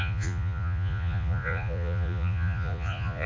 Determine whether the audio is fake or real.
fake